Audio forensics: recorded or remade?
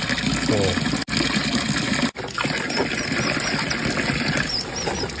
recorded